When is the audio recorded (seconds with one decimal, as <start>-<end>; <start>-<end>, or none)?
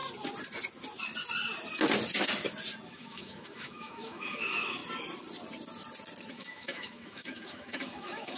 0.0-2.9; 4.8-6.3